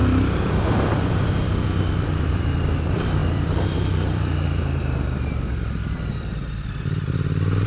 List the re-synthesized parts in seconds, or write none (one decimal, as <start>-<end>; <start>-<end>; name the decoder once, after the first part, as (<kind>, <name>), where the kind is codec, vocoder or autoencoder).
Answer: 0.0-7.7 (vocoder, BigVGAN v2)